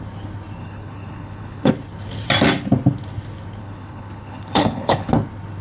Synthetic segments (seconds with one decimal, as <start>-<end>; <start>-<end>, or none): 0.6-1.7; 3.6-5.1